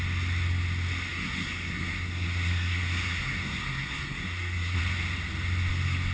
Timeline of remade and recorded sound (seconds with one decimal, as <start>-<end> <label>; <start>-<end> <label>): 0.0-1.1 recorded; 1.1-4.8 remade; 4.8-6.1 recorded